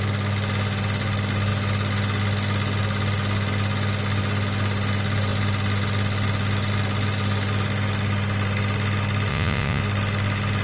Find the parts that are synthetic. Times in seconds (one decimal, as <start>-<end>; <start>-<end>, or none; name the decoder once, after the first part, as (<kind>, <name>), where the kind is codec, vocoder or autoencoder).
9.3-9.8 (vocoder, Vocos)

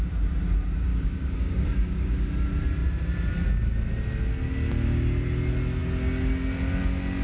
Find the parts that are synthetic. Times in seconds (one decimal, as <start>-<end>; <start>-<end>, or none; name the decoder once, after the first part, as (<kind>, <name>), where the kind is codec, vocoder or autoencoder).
0.9-2.3 (codec, DAC)

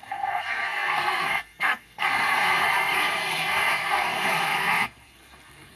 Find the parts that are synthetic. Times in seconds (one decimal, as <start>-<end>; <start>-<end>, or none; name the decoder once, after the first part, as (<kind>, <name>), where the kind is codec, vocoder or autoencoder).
0.0-5.8 (codec, SNAC)

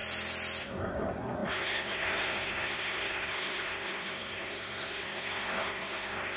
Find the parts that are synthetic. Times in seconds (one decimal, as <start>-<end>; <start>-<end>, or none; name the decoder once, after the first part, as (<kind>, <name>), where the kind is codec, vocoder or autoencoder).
0.6-6.4 (codec, SNAC)

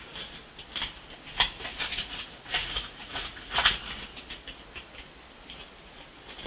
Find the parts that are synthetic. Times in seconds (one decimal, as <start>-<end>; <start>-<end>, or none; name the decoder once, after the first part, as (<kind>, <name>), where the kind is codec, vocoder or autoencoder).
1.9-3.8 (vocoder, Vocos)